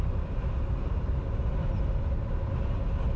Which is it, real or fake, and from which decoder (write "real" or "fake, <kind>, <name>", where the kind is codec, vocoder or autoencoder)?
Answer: real